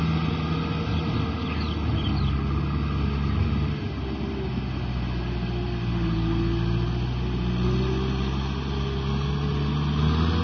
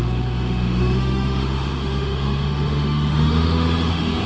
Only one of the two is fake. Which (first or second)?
second